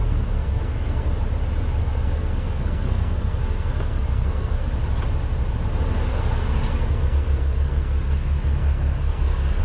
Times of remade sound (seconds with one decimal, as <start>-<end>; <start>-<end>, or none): 0.0-1.1; 1.8-4.7; 6.1-9.6